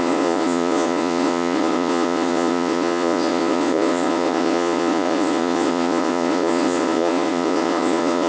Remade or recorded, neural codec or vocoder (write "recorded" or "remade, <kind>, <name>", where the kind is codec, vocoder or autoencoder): remade, vocoder, Vocos